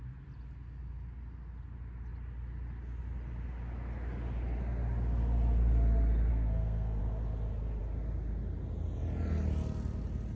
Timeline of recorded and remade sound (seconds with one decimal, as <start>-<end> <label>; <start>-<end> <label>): 0.0-6.3 recorded; 6.3-7.0 remade; 7.0-10.4 recorded